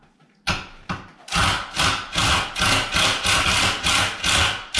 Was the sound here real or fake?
real